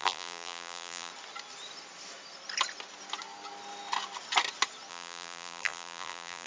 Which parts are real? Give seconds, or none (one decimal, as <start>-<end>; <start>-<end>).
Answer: 1.1-4.9

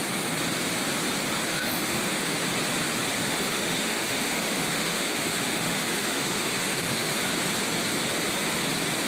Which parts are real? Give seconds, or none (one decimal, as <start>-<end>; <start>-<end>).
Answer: 0.0-1.5; 2.3-3.2; 7.2-9.1

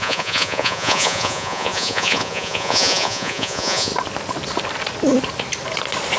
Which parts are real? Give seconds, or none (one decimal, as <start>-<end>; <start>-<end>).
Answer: 3.9-6.2